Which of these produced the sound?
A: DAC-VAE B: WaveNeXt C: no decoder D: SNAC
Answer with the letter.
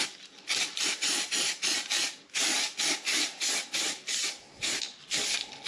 C